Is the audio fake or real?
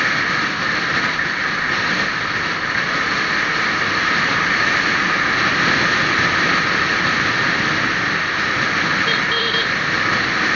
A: real